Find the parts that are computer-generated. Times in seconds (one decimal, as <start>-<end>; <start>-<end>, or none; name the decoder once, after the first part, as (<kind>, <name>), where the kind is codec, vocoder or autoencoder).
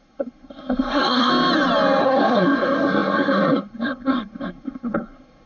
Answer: 0.0-1.3 (codec, SNAC); 2.0-5.5